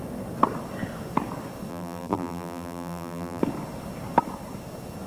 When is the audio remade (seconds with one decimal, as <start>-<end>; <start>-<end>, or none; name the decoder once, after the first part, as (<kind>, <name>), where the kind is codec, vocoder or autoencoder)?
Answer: 1.7-3.4 (vocoder, BigVGAN v2)